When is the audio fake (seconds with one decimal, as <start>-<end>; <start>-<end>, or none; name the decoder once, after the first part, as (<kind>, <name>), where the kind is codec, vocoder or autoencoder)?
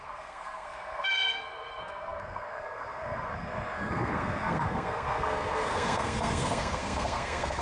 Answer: 0.0-7.6 (codec, SNAC)